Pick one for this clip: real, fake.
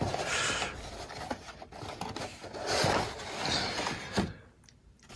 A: real